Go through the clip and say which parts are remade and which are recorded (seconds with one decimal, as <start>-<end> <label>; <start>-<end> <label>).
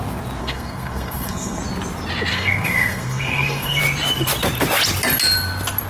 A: 0.0-0.4 recorded; 0.4-1.6 remade; 1.6-2.3 recorded; 2.3-3.8 remade; 3.8-5.9 recorded